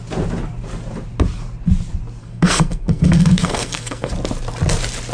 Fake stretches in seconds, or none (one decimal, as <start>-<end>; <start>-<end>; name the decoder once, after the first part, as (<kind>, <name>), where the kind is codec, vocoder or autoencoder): 2.2-4.1 (codec, SNAC)